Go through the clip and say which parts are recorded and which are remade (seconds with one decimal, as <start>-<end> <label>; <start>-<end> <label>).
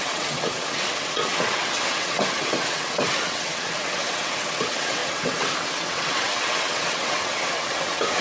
0.0-8.2 remade